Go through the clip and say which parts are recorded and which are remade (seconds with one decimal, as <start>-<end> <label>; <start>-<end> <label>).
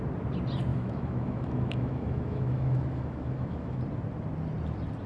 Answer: 0.0-0.7 recorded; 0.7-3.8 remade; 3.8-5.1 recorded